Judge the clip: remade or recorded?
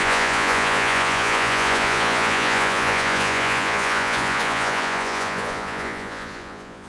remade